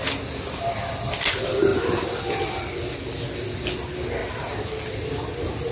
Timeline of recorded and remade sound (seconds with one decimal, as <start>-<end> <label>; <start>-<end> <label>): 0.0-5.7 recorded